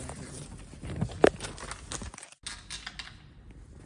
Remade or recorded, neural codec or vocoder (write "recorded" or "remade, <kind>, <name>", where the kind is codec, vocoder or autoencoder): recorded